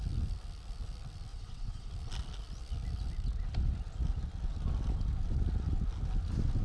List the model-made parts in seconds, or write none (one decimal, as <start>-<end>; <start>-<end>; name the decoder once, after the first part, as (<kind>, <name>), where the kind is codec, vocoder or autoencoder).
1.3-1.9 (vocoder, WaveNeXt)